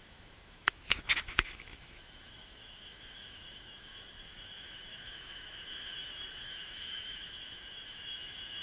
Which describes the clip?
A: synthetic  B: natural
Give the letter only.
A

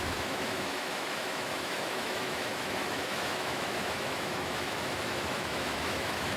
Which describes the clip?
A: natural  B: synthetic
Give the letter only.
B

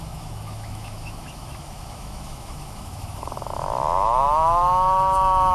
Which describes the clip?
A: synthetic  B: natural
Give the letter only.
A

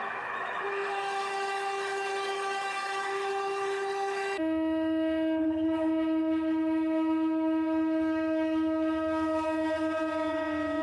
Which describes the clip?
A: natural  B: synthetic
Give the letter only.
B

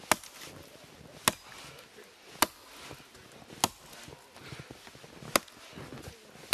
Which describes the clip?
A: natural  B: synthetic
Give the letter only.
A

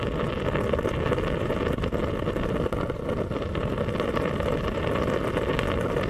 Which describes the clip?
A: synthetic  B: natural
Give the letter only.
B